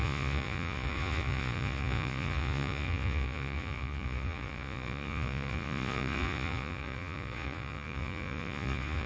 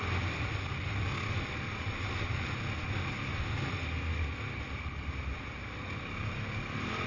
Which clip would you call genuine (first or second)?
second